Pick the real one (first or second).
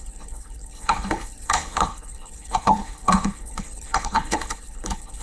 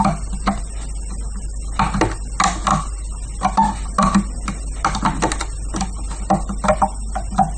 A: second